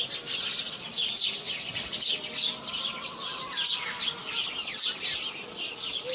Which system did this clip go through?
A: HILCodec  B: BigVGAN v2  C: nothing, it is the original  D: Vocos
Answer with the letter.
C